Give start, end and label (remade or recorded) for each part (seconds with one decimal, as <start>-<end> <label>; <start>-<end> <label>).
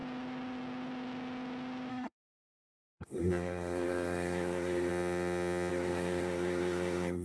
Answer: 0.0-1.9 recorded; 1.9-4.9 remade; 4.9-5.7 recorded; 5.7-7.2 remade